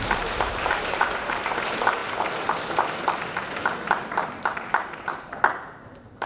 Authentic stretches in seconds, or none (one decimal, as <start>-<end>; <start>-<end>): 2.0-3.8